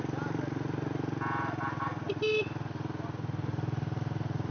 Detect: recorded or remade recorded